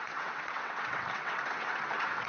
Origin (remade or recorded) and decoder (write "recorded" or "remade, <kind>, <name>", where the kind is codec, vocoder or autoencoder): remade, vocoder, WaveNeXt